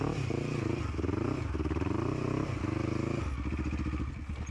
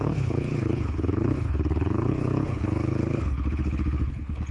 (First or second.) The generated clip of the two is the second